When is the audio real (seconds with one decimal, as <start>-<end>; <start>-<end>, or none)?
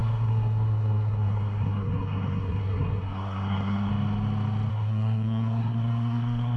3.9-4.7